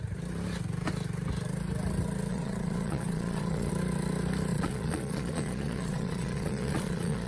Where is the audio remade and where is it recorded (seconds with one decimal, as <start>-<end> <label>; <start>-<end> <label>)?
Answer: 0.0-2.3 recorded; 2.3-3.7 remade; 3.7-4.5 recorded; 4.5-7.3 remade